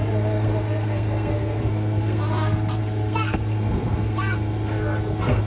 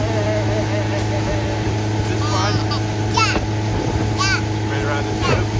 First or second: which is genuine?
second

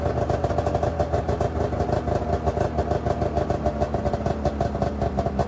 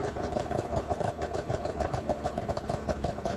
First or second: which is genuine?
first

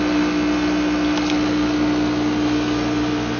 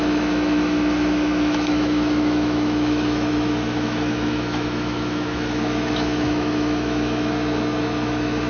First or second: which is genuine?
first